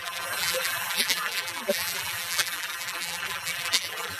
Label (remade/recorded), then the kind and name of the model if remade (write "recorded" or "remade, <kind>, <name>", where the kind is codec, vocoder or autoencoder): remade, vocoder, BigVGAN v2